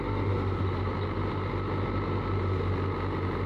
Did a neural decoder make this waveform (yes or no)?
no